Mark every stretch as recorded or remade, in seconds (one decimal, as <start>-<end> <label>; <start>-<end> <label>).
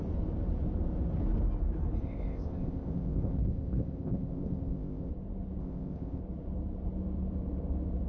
0.0-2.0 recorded; 2.0-5.1 remade; 5.1-5.6 recorded; 5.6-6.2 remade; 6.2-8.1 recorded